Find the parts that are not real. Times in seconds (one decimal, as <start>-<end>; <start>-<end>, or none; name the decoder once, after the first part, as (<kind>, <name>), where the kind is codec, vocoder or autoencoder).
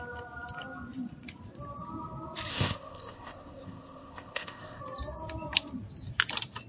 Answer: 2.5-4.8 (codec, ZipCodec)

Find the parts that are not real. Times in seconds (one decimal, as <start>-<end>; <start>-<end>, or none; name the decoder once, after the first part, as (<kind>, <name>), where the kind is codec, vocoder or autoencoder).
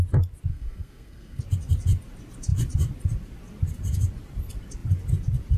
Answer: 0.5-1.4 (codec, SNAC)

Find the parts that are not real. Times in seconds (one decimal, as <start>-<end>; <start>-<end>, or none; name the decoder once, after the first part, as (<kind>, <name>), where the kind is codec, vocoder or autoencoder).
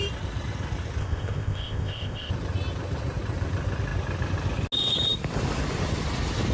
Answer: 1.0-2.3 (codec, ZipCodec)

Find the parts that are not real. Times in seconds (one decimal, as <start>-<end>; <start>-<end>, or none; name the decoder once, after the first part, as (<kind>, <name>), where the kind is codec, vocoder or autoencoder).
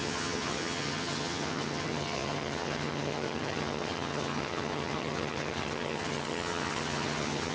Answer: 0.0-7.5 (vocoder, HiFi-GAN)